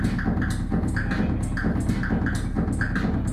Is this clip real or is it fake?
real